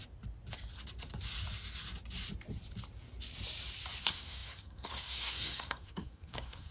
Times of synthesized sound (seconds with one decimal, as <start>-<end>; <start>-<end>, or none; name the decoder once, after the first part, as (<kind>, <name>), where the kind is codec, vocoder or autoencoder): 4.0-6.7 (codec, SNAC)